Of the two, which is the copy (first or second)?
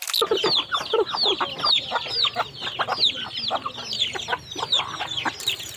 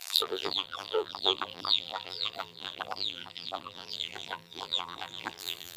second